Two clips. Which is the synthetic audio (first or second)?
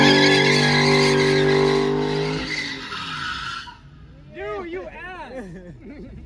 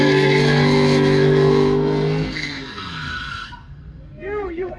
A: second